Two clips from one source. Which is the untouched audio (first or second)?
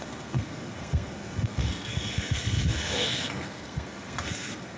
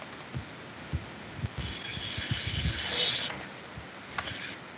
second